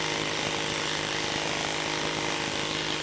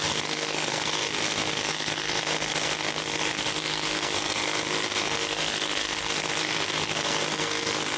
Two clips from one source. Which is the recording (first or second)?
first